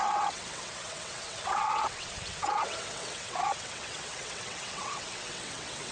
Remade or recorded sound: remade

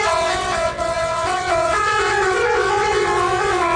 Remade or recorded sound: remade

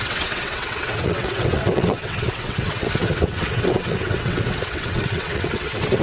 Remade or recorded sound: remade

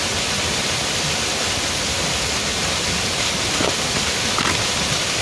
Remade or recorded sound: recorded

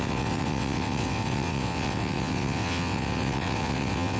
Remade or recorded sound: remade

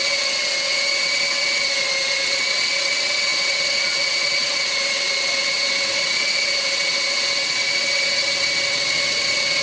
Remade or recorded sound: remade